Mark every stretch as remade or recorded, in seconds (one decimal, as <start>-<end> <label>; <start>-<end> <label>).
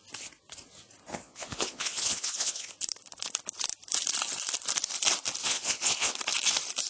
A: 0.0-1.1 recorded; 1.1-2.7 remade; 2.7-5.4 recorded; 5.4-6.1 remade; 6.1-6.9 recorded